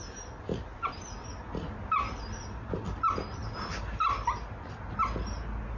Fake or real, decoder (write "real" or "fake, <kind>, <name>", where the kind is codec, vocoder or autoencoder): real